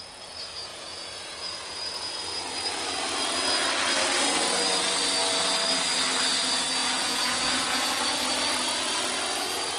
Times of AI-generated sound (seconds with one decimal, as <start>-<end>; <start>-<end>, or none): 0.7-2.2; 6.8-7.9